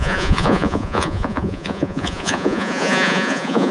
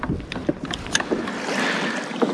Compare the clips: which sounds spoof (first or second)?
first